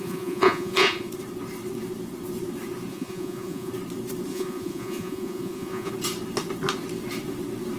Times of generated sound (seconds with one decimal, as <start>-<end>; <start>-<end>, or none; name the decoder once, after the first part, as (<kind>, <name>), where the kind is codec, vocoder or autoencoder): 0.0-1.1 (vocoder, Vocos); 2.9-3.7; 4.3-5.9